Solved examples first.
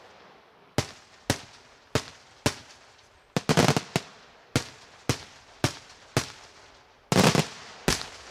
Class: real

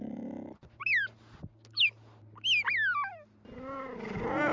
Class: real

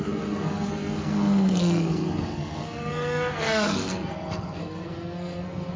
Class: fake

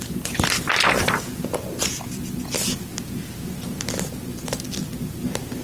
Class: real